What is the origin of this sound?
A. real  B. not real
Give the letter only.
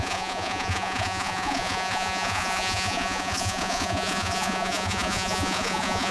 B